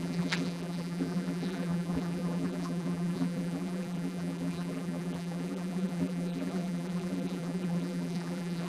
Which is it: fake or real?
fake